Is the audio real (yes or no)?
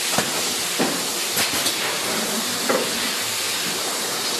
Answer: yes